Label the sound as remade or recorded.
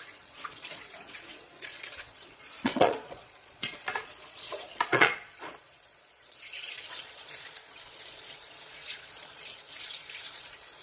remade